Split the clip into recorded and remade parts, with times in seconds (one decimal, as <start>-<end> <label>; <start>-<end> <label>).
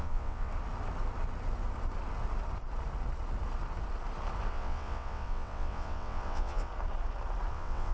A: 0.0-0.5 remade; 0.5-4.5 recorded; 4.5-6.7 remade; 6.7-7.5 recorded; 7.5-7.9 remade